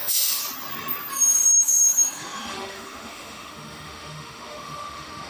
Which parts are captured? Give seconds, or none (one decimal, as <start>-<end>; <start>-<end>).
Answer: 0.4-1.1